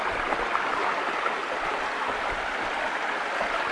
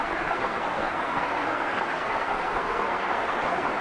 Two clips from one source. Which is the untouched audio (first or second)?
first